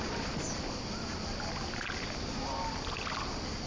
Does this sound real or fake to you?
real